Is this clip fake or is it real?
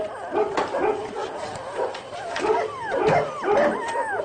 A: real